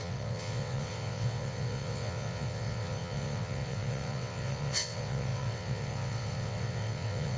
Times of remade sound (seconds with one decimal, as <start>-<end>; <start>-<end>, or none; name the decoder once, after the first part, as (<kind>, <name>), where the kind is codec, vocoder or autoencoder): 0.0-7.4 (vocoder, WaveNeXt)